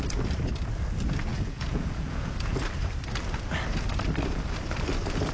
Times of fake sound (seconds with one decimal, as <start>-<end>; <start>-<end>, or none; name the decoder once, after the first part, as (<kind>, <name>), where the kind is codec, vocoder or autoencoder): 1.3-2.6 (vocoder, Vocos)